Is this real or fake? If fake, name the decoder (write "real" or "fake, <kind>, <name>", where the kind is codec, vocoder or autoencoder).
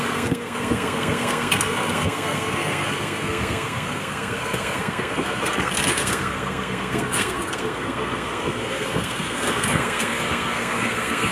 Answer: fake, codec, SNAC